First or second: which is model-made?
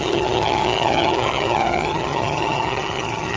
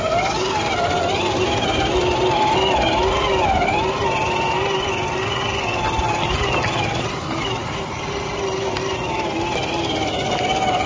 first